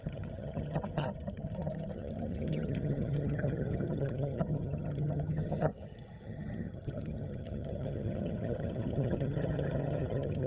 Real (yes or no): no